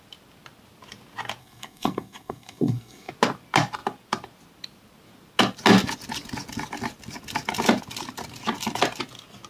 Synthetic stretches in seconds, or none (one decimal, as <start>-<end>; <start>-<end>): 1.4-3.1